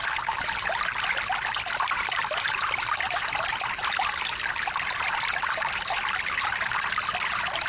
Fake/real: real